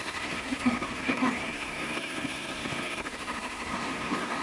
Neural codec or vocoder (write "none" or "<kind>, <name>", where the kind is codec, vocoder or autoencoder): codec, SNAC